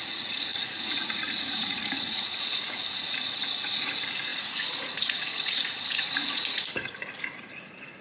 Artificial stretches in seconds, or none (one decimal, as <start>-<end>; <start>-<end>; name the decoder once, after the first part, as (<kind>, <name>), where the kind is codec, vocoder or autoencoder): 0.0-8.0 (vocoder, Vocos)